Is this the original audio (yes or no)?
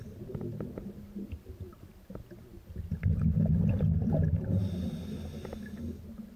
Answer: yes